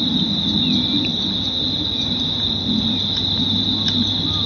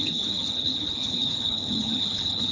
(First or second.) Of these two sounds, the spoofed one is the second